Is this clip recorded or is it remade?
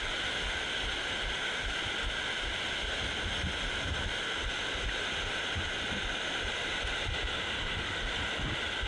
recorded